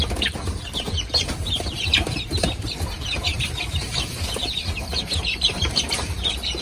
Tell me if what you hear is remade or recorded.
remade